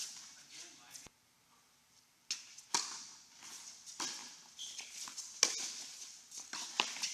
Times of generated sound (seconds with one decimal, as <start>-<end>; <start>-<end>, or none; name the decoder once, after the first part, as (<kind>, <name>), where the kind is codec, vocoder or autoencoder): none

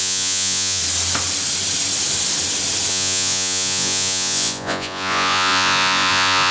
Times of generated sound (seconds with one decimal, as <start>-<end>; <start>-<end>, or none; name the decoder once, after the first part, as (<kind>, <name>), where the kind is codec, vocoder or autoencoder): 0.0-0.8 (vocoder, Vocos); 2.9-6.5